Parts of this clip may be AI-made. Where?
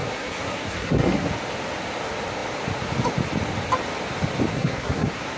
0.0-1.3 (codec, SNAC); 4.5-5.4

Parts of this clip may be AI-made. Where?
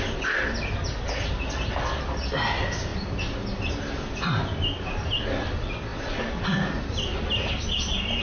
none